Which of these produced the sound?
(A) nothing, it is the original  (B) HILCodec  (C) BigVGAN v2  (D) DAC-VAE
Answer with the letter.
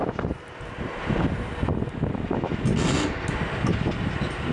A